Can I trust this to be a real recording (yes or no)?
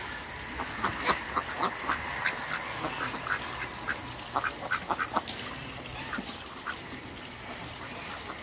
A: yes